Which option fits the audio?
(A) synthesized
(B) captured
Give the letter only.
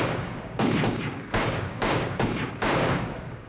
A